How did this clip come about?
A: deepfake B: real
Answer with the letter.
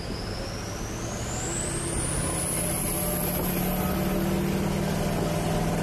B